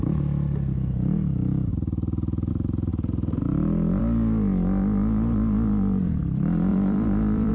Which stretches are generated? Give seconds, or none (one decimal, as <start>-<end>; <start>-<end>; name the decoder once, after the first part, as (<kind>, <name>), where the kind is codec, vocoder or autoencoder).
1.7-2.5 (vocoder, BigVGAN v2); 6.7-7.5